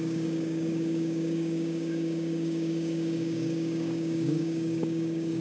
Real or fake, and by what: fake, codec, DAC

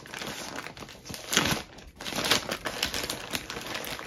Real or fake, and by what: real